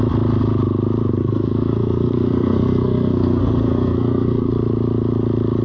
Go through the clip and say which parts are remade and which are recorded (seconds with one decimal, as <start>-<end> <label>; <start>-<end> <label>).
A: 0.0-1.2 recorded; 1.2-4.5 remade; 4.5-5.6 recorded